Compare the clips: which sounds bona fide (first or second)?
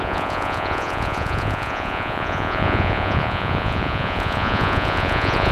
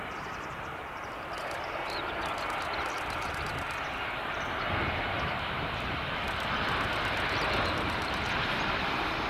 second